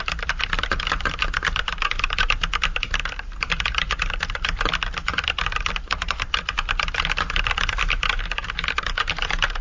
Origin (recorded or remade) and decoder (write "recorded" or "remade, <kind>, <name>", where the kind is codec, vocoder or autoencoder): remade, vocoder, BigVGAN v2